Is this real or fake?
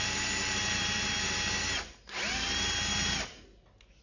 real